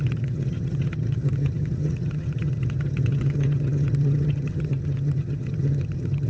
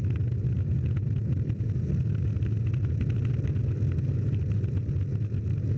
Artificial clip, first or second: first